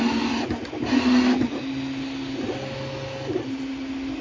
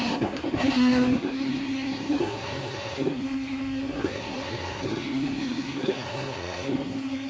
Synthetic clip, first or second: second